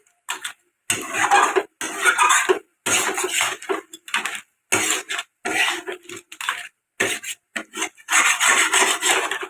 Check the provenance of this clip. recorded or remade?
recorded